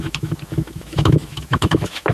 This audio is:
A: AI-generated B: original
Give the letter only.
A